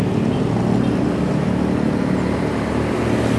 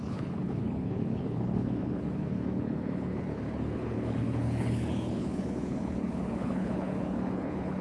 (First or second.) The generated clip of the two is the second